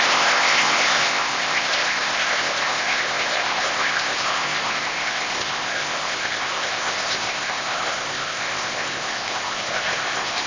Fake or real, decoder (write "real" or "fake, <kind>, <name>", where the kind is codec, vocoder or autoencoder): fake, codec, ZipCodec